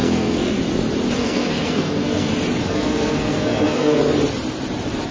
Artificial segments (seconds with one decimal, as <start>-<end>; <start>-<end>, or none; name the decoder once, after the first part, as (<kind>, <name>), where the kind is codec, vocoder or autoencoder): 0.0-0.6 (codec, SNAC); 1.2-2.3; 2.7-4.0

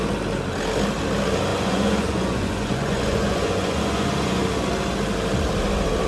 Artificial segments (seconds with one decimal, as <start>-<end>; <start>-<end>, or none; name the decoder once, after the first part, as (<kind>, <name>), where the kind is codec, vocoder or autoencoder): 1.5-4.4 (vocoder, Vocos)

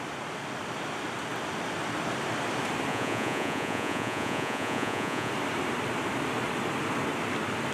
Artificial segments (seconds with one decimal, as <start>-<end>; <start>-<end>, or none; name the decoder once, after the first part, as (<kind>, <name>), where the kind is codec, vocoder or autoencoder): 2.9-5.3 (vocoder, Vocos)

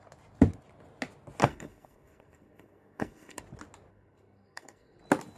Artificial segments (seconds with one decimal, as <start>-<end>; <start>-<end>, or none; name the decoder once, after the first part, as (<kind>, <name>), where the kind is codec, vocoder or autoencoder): 1.4-3.4 (codec, SNAC); 3.9-5.0

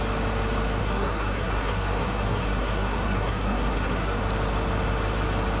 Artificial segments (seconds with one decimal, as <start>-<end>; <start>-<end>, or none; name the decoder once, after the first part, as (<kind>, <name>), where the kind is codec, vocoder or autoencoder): 0.8-4.2 (codec, SNAC)

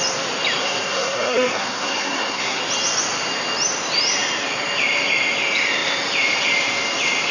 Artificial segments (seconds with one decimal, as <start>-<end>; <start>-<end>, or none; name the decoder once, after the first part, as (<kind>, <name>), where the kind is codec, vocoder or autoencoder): 0.6-2.6 (codec, SNAC)

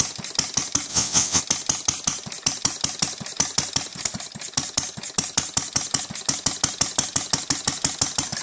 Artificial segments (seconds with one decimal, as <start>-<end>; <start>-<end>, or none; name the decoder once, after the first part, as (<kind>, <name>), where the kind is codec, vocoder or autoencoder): 0.9-1.4 (vocoder, WaveNeXt)

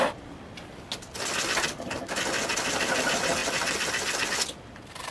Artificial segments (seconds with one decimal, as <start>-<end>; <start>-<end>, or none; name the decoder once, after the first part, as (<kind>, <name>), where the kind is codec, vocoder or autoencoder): none